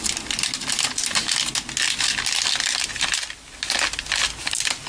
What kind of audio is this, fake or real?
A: real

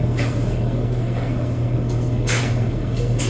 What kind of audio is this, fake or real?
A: fake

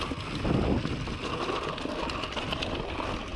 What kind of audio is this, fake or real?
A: real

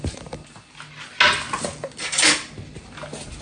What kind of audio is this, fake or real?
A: real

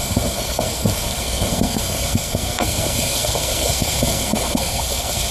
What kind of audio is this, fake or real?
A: fake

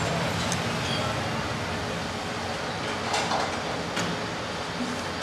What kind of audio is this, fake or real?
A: real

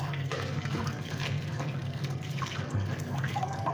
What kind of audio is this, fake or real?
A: fake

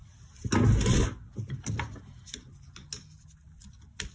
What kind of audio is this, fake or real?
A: real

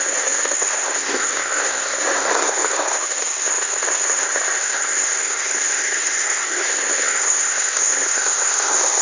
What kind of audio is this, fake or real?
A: fake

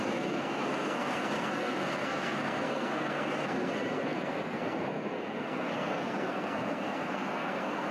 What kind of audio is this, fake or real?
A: fake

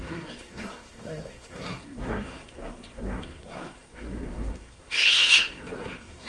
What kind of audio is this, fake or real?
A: fake